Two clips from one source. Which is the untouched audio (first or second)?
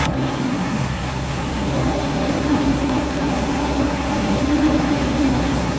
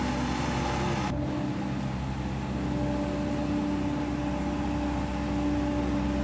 second